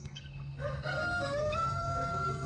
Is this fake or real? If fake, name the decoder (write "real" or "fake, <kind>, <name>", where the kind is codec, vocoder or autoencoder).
fake, codec, SNAC